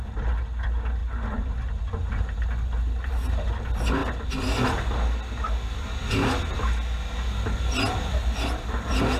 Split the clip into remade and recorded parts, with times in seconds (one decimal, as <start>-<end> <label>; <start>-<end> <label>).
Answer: 0.0-9.2 recorded